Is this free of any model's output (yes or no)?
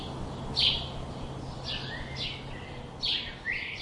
yes